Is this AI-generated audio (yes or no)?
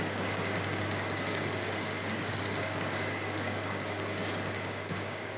yes